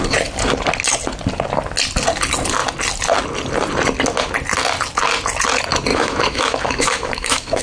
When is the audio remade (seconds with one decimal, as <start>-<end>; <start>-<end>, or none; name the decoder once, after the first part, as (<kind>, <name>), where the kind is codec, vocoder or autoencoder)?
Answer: 5.9-7.6 (autoencoder, DAC-VAE)

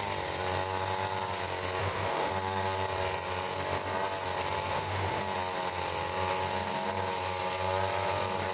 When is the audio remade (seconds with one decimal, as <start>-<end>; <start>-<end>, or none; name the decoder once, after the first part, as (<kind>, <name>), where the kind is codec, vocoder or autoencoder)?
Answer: 1.8-2.3 (autoencoder, DAC-VAE); 4.7-5.2

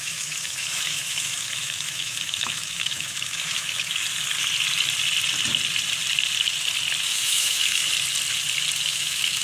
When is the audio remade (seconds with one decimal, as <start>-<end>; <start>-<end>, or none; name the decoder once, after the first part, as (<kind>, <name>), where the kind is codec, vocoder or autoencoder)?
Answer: 0.0-4.0 (autoencoder, DAC-VAE); 7.0-7.8; 8.9-9.4

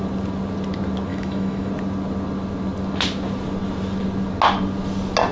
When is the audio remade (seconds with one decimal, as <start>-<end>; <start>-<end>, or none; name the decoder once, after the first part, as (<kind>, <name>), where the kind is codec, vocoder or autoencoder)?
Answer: 1.1-1.7 (autoencoder, DAC-VAE)

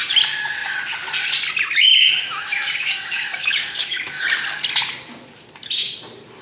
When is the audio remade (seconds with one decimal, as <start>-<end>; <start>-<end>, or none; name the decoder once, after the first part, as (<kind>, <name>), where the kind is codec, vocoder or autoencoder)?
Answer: 1.9-4.2 (autoencoder, DAC-VAE)

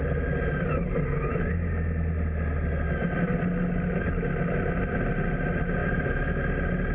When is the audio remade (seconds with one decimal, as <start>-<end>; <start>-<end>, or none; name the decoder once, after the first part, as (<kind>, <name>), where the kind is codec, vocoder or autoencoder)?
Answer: 5.8-6.5 (autoencoder, DAC-VAE)

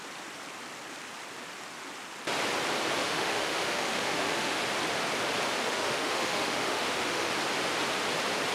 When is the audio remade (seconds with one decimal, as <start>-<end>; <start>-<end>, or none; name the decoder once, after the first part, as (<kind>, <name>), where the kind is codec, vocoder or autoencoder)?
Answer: 3.0-4.6 (autoencoder, DAC-VAE); 5.6-7.3